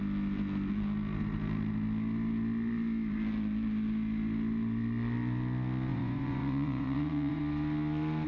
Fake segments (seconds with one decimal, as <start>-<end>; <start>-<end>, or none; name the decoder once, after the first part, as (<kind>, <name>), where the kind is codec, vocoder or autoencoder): 5.9-7.4 (vocoder, Vocos)